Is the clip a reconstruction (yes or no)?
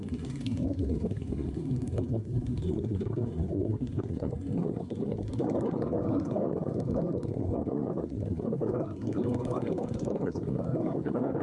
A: yes